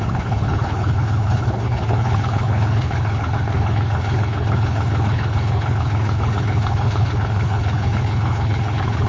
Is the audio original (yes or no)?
no